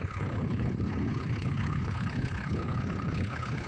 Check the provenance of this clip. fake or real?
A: fake